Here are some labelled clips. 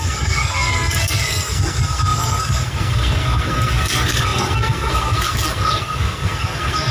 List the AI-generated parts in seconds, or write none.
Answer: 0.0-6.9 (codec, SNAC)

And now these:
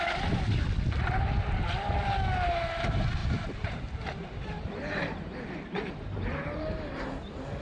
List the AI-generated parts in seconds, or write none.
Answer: 3.2-7.1 (vocoder, BigVGAN v2)

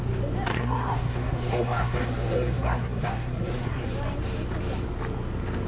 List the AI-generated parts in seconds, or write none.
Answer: 0.5-3.9 (codec, SNAC)